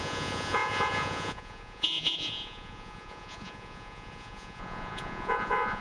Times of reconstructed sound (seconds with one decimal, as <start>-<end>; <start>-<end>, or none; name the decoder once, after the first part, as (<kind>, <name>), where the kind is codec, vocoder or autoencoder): 0.0-5.8 (vocoder, Vocos)